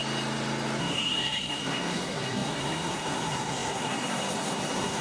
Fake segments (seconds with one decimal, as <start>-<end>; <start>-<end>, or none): 0.8-5.0